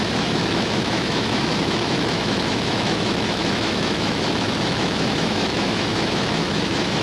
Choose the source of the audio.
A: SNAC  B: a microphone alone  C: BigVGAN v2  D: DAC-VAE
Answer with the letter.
D